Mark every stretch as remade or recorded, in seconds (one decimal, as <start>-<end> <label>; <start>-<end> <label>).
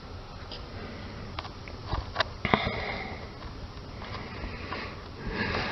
0.0-5.7 recorded